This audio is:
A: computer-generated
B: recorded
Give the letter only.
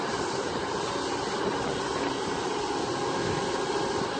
B